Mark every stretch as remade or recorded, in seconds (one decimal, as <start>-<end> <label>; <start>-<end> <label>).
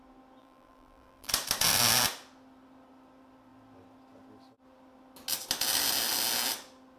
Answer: 0.0-0.4 recorded; 0.4-1.3 remade; 1.3-7.0 recorded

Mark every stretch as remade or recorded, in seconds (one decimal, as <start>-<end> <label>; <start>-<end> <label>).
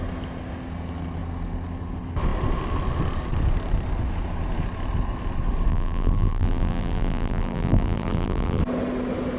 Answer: 0.0-5.7 recorded; 5.7-8.6 remade; 8.6-9.4 recorded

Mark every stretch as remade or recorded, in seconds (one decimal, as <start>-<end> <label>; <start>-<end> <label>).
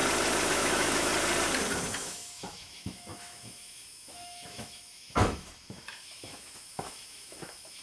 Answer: 0.0-0.5 recorded; 0.5-1.1 remade; 1.1-2.0 recorded; 2.0-7.8 remade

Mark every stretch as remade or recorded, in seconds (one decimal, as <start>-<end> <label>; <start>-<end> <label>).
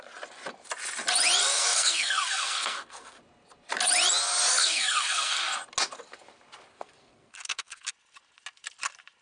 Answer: 0.0-1.4 recorded; 1.4-3.2 remade; 3.2-4.6 recorded; 4.6-5.4 remade; 5.4-6.7 recorded; 6.7-7.9 remade; 7.9-9.2 recorded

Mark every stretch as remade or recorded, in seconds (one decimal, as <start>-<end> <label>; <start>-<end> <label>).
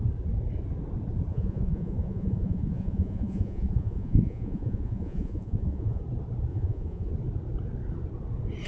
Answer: 0.0-1.3 recorded; 1.3-6.0 remade; 6.0-6.5 recorded; 6.5-7.1 remade; 7.1-8.7 recorded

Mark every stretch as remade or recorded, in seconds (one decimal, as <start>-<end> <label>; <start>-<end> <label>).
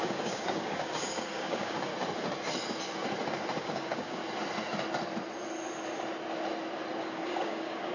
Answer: 0.0-1.9 remade; 1.9-3.6 recorded; 3.6-4.2 remade; 4.2-7.0 recorded; 7.0-7.9 remade